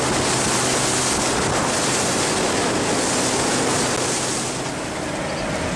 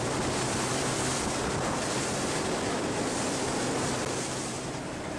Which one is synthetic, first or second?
second